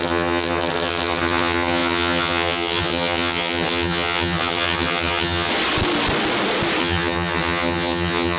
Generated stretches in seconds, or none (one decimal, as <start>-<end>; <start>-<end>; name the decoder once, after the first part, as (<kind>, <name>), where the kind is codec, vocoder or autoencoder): 0.0-5.5 (vocoder, HiFi-GAN); 6.8-8.4